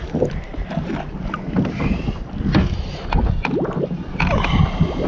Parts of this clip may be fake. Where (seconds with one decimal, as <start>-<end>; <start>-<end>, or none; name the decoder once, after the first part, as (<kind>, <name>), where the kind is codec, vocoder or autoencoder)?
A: none